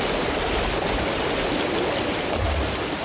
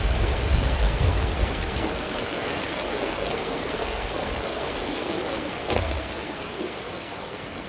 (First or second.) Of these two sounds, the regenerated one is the second